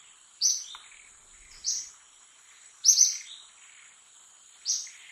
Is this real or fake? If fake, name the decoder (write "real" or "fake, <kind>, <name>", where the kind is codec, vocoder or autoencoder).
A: fake, vocoder, BigVGAN v2